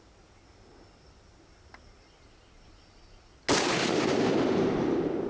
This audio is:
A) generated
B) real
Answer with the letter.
B